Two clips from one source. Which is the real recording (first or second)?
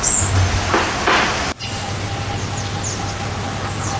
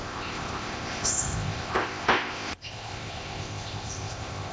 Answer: first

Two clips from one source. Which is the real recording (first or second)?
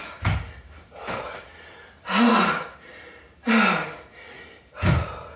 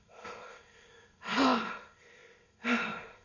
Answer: first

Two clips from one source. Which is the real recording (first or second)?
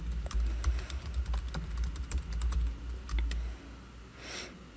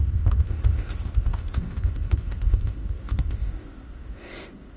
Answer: first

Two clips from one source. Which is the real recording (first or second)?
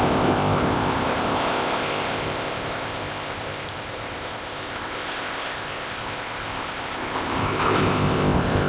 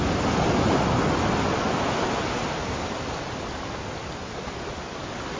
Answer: second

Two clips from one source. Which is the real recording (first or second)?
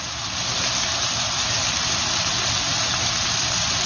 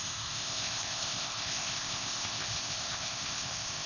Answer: first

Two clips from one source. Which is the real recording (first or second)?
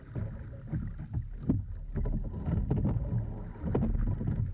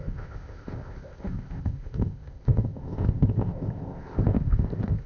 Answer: first